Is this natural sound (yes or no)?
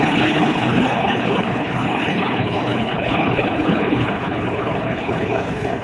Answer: no